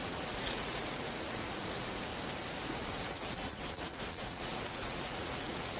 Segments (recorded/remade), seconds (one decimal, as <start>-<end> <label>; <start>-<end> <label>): 0.0-2.1 remade; 2.1-2.7 recorded; 2.7-5.8 remade